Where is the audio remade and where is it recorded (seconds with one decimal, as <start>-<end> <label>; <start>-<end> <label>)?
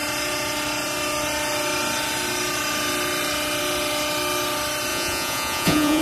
0.0-4.9 recorded; 4.9-6.0 remade